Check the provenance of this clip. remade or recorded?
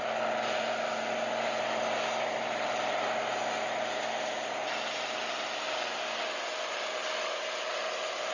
recorded